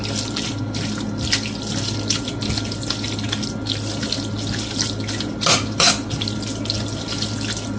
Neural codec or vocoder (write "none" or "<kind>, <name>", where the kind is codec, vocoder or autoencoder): none